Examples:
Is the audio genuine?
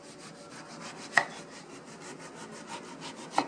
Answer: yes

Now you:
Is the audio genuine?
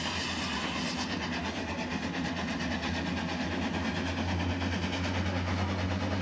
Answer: yes